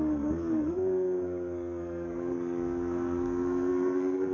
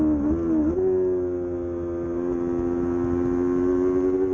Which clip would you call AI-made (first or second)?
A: first